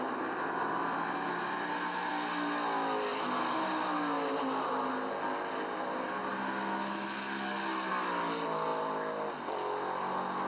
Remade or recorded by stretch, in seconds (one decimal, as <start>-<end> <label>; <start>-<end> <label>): 0.0-10.5 recorded